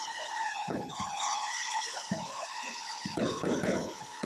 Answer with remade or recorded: remade